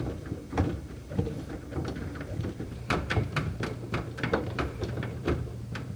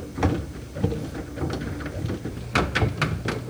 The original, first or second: second